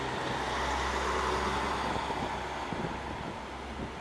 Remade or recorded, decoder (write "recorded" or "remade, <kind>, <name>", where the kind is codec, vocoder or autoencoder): recorded